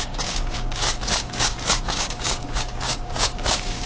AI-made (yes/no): yes